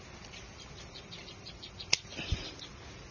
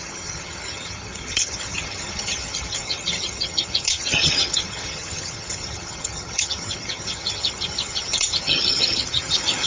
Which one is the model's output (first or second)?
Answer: second